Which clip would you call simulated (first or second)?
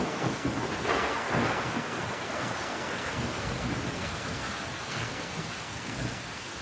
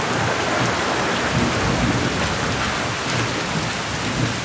first